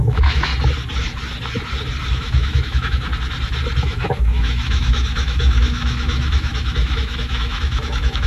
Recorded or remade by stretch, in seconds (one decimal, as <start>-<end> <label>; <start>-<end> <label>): 0.0-0.5 remade; 0.5-2.1 recorded; 2.1-3.1 remade; 3.1-3.8 recorded; 3.8-8.3 remade